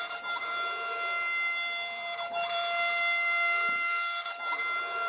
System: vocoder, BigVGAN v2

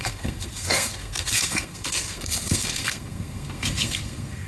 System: codec, SNAC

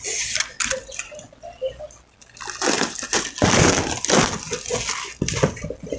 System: none